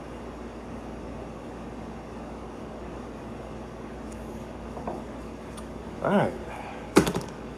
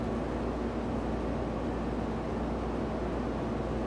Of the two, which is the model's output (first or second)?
first